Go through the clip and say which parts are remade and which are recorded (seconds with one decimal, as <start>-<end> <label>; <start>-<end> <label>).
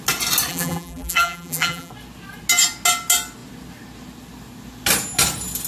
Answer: 0.0-0.5 recorded; 0.5-1.9 remade; 1.9-5.7 recorded